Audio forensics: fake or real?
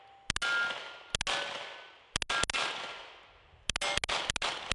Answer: real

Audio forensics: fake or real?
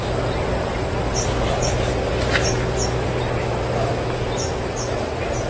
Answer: real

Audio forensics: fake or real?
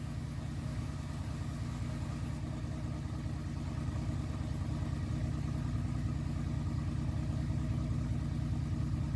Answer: real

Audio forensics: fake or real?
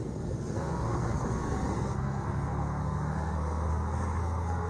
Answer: fake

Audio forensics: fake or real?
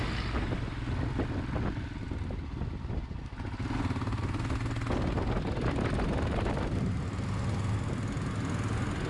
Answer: real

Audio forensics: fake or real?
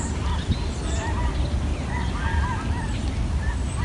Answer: real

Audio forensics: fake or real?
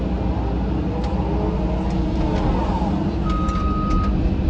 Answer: real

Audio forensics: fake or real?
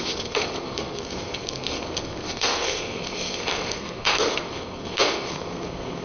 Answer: fake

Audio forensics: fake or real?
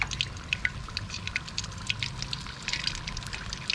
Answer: real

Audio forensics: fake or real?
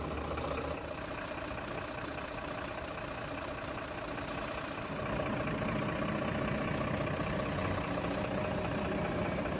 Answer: real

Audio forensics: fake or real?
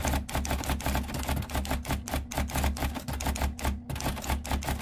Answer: real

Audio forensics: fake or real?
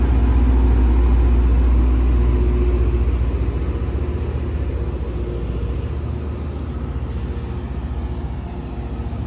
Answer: real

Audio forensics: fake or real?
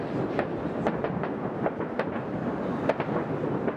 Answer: real